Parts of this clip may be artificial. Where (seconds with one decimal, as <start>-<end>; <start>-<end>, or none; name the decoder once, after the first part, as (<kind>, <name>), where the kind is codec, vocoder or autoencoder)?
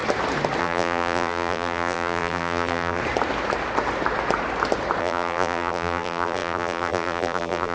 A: 0.6-3.0 (vocoder, BigVGAN v2); 5.0-7.7